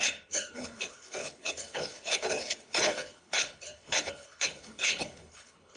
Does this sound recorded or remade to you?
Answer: remade